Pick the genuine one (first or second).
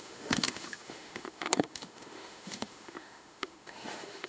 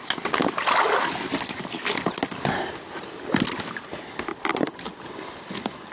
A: second